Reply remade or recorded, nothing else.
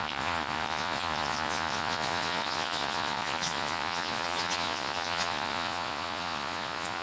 remade